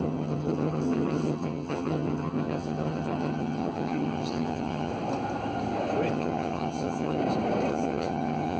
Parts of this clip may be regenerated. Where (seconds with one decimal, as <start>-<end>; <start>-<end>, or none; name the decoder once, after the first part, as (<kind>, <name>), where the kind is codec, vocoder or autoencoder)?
0.0-4.9 (vocoder, HiFi-GAN); 6.1-7.2; 7.7-8.6